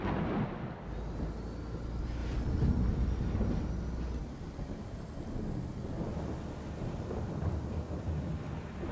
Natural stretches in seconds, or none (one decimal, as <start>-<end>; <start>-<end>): 0.0-2.2; 2.7-8.9